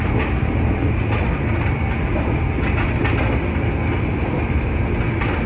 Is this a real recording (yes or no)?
yes